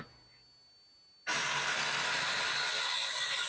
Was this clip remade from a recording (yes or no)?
no